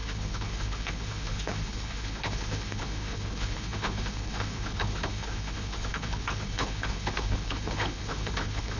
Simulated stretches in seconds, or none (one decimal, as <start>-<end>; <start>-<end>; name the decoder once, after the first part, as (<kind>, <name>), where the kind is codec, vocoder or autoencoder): 0.0-8.8 (codec, HILCodec)